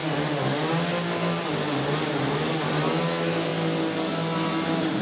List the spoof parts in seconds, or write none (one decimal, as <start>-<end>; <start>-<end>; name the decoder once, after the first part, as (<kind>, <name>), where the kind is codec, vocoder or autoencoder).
0.0-3.0 (vocoder, BigVGAN v2)